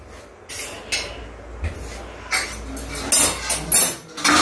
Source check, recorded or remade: recorded